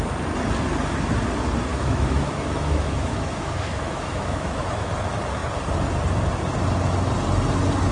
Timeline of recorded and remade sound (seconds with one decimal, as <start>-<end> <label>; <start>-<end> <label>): 0.0-1.7 recorded; 1.7-4.9 remade; 4.9-7.9 recorded